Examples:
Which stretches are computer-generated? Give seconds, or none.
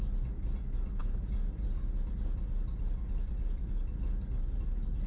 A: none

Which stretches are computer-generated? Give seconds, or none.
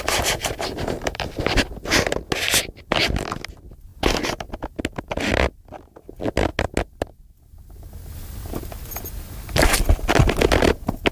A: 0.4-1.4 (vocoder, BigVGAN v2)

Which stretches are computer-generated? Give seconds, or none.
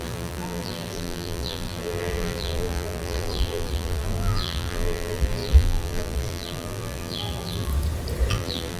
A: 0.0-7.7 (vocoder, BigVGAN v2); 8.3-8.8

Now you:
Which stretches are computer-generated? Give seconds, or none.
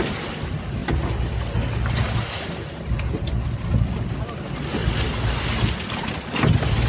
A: none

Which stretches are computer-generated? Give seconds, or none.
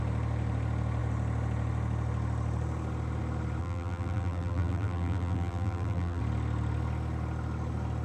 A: 3.6-6.2 (vocoder, BigVGAN v2)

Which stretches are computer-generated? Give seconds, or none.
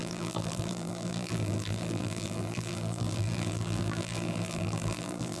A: 0.0-5.4 (vocoder, BigVGAN v2)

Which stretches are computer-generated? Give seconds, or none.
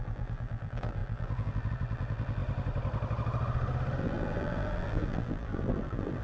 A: 0.0-2.4 (vocoder, BigVGAN v2); 4.0-6.2